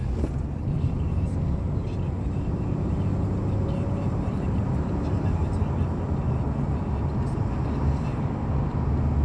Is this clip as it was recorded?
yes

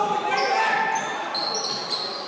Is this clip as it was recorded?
yes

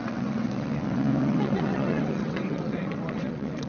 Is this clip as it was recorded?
no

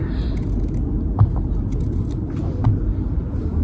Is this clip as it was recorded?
yes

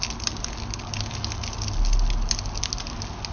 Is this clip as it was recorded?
yes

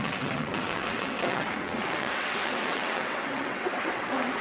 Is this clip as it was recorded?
no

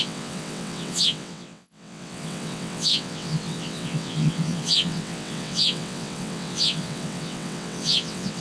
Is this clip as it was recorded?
no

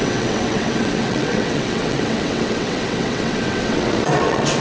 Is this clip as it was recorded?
no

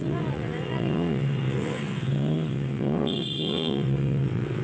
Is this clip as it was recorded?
no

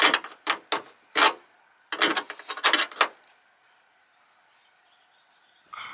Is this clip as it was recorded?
yes